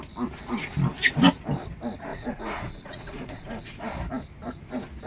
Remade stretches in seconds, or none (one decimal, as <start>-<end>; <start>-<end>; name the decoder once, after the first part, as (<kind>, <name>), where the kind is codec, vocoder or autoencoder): 2.1-3.7 (vocoder, Vocos)